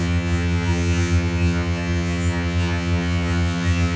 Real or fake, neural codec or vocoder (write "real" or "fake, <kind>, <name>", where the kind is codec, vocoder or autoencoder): fake, vocoder, HiFi-GAN